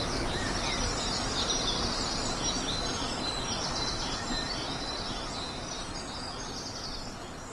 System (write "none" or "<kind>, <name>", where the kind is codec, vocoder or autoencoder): none